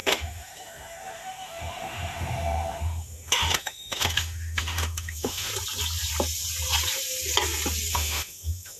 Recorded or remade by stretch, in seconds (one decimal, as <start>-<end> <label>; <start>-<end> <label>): 0.0-5.5 remade; 5.5-7.9 recorded; 7.9-8.8 remade

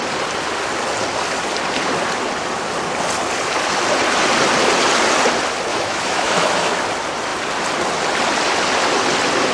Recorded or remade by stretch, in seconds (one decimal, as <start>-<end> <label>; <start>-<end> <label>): 0.0-5.7 recorded; 5.7-6.8 remade; 6.8-9.5 recorded

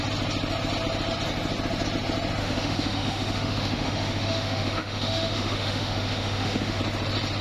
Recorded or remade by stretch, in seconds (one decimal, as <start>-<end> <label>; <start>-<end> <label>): 0.0-2.4 recorded; 2.4-6.8 remade; 6.8-7.4 recorded

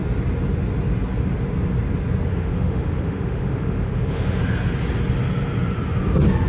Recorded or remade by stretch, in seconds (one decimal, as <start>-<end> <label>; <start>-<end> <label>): 0.0-2.3 recorded; 2.3-4.4 remade; 4.4-6.5 recorded

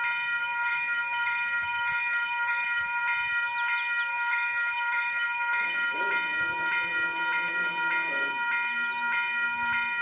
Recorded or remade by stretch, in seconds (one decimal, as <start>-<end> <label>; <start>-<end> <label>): 0.0-0.4 recorded; 0.4-3.0 remade; 3.0-4.1 recorded; 4.1-6.0 remade; 6.0-10.0 recorded